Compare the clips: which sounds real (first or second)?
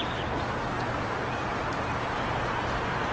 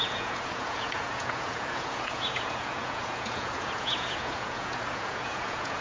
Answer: first